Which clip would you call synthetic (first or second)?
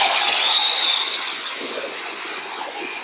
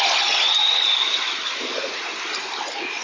first